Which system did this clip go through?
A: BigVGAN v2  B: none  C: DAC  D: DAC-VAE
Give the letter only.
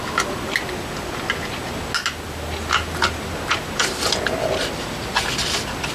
B